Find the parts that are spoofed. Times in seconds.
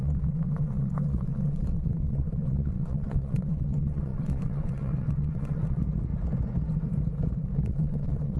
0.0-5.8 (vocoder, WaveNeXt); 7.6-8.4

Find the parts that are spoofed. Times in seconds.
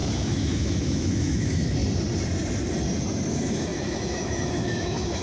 0.0-1.8 (autoencoder, DAC-VAE); 3.3-5.2